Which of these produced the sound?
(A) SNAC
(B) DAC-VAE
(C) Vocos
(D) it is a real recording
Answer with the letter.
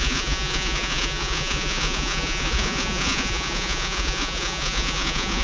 C